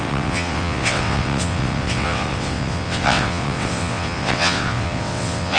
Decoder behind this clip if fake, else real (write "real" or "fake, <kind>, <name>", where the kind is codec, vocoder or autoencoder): fake, vocoder, WaveNeXt